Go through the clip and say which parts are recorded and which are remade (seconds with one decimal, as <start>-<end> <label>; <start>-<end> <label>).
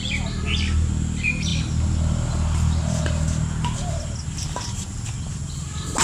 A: 0.0-6.0 recorded